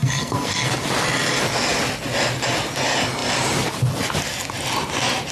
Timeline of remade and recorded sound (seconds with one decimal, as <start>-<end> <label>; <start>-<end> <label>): 0.0-0.7 remade; 0.7-5.3 recorded